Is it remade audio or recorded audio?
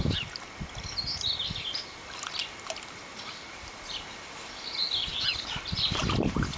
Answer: recorded